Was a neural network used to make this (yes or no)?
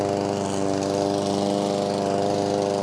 no